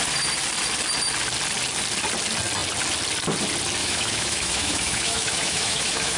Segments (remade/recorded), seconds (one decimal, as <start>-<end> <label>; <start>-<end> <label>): 0.0-3.8 recorded; 3.8-6.2 remade